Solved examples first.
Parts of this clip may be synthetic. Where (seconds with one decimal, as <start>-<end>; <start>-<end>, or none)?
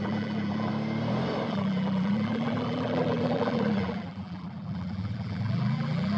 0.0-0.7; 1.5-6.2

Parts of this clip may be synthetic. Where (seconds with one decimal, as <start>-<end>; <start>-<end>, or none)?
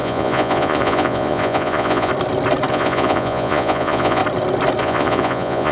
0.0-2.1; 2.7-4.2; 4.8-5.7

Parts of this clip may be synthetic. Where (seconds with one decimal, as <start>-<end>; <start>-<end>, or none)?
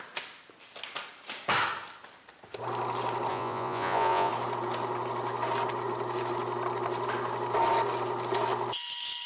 3.3-4.3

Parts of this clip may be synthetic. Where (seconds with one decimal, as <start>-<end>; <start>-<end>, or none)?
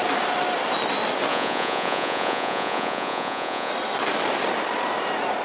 1.3-3.7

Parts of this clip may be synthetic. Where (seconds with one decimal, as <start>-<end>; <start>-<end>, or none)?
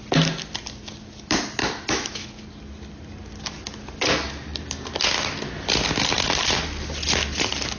1.6-2.4